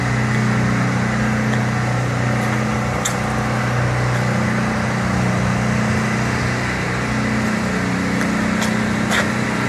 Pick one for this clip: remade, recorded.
recorded